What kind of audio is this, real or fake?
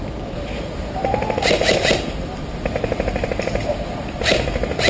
fake